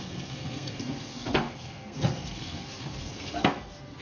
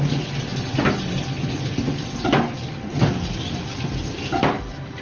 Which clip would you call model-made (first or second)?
first